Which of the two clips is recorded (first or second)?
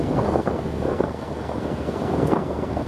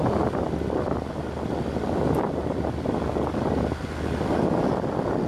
second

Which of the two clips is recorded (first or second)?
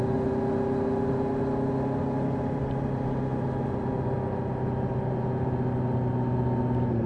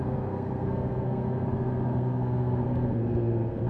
first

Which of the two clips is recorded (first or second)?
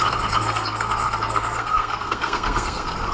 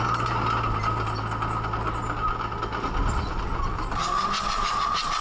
second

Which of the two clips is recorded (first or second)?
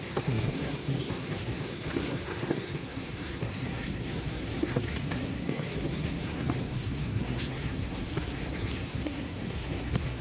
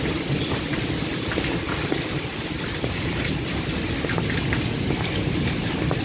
second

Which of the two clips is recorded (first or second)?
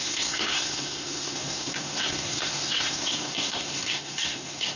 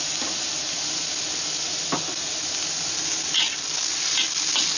second